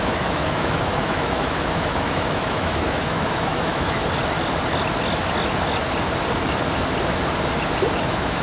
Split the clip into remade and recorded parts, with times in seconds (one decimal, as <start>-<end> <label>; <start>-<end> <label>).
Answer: 0.0-4.0 remade; 4.0-8.0 recorded; 8.0-8.4 remade